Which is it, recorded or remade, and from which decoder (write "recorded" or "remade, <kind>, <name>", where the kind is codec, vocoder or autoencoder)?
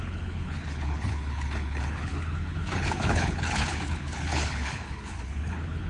remade, codec, HILCodec